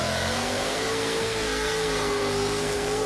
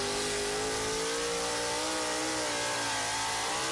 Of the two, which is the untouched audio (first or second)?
second